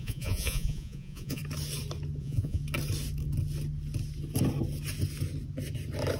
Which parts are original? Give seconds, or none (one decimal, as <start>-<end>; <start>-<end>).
1.4-2.2; 2.6-6.2